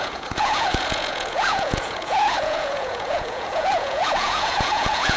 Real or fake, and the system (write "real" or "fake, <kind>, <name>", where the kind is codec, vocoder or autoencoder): fake, vocoder, Vocos